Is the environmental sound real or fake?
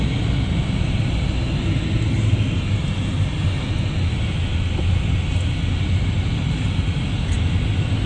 real